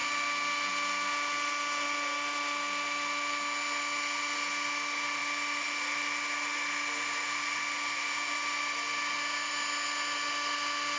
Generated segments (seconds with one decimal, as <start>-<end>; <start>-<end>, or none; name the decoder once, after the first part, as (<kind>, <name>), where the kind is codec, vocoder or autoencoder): none